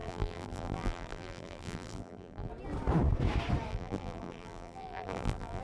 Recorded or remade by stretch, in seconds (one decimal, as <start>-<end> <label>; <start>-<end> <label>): 0.0-2.5 remade; 2.5-3.7 recorded; 3.7-5.6 remade